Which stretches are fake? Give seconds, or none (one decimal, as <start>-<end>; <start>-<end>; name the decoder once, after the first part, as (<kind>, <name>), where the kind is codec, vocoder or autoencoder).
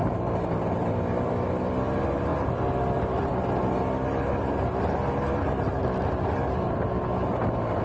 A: 0.0-1.6 (vocoder, BigVGAN v2); 2.3-3.3